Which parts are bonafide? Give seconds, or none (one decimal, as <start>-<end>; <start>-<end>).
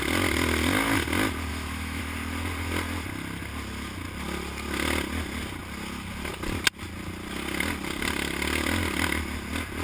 0.0-1.5; 2.0-9.8